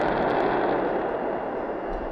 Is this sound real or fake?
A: real